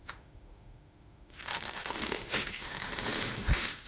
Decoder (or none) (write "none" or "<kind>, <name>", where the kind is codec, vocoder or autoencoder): autoencoder, DAC-VAE